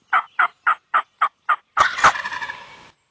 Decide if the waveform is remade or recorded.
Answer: recorded